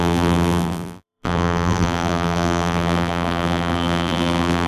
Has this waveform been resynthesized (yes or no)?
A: yes